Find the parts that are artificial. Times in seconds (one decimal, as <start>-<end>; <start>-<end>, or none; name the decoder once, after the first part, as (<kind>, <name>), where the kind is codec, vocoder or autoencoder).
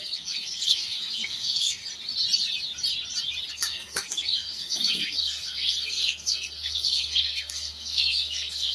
0.0-1.8 (codec, SNAC); 3.5-8.7